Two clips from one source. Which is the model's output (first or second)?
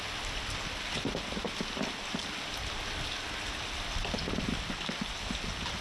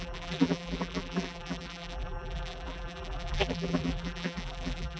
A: second